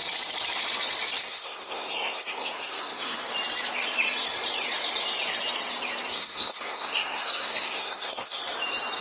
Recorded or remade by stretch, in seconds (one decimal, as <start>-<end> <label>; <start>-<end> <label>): 0.0-1.2 recorded; 1.2-3.2 remade; 3.2-6.1 recorded; 6.1-8.4 remade; 8.4-9.0 recorded